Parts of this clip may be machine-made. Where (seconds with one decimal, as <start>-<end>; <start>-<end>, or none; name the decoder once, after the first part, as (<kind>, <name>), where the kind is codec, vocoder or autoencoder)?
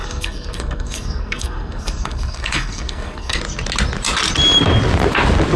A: 0.0-3.4 (codec, SNAC)